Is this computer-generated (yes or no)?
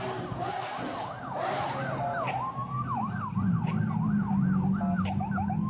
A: no